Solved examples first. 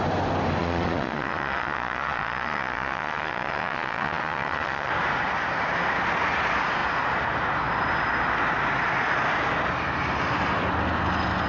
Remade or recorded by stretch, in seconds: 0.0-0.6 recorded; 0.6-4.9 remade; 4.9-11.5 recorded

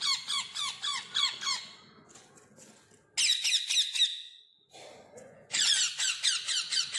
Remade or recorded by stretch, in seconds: 0.0-2.8 remade; 2.8-4.9 recorded; 4.9-7.0 remade

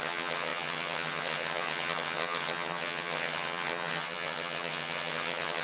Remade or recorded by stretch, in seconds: 0.0-5.6 remade

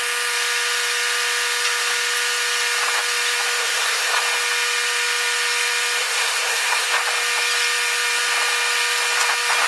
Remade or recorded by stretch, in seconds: 0.0-3.6 recorded; 3.6-4.2 remade; 4.2-6.0 recorded; 6.0-6.9 remade; 6.9-9.7 recorded

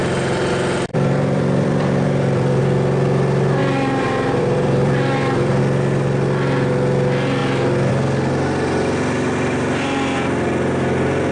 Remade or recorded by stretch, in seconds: 0.0-0.5 remade; 0.5-0.9 recorded; 0.9-2.6 remade; 2.6-3.6 recorded; 3.6-5.6 remade; 5.6-11.3 recorded

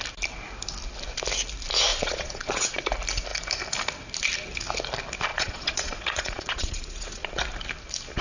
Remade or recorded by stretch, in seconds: 0.0-1.9 recorded; 1.9-2.7 remade; 2.7-5.3 recorded; 5.3-7.4 remade; 7.4-8.2 recorded

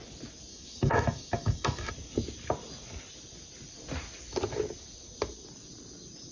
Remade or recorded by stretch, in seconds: 0.0-0.5 recorded; 0.5-1.9 remade; 1.9-6.3 recorded

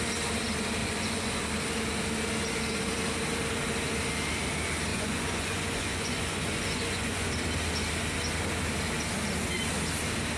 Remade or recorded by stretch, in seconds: 0.0-0.8 recorded; 0.8-1.4 remade; 1.4-4.9 recorded; 4.9-7.3 remade; 7.3-10.4 recorded